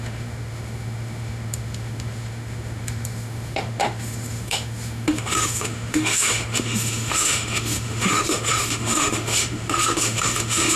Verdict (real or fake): fake